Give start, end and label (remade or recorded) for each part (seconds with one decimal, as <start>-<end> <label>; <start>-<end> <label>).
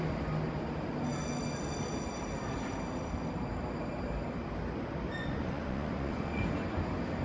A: 0.0-5.2 recorded; 5.2-6.4 remade; 6.4-7.2 recorded